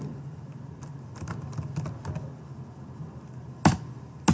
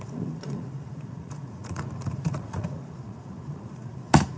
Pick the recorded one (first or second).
first